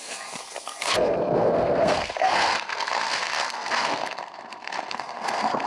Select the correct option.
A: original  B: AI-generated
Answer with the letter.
B